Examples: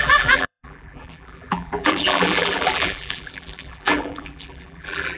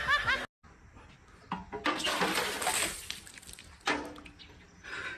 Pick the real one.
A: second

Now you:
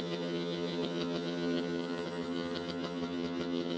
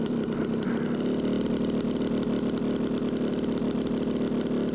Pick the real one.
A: second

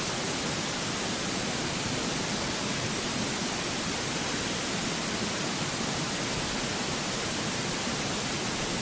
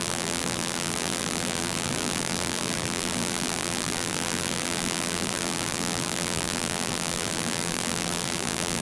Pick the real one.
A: first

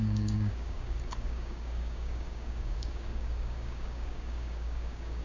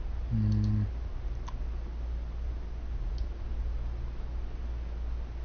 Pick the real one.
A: second